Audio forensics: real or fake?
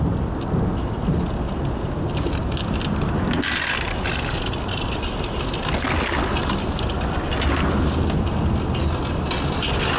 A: real